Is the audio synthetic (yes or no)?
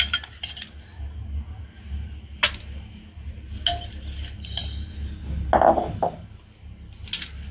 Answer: no